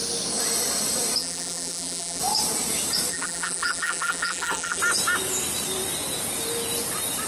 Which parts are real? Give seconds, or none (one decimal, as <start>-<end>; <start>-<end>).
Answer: 0.0-1.2; 2.2-3.1; 4.8-7.3